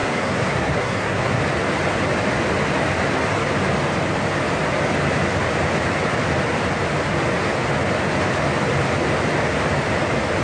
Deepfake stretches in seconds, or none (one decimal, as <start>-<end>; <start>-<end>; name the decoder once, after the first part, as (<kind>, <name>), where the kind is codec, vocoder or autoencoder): 0.0-1.4 (codec, SNAC)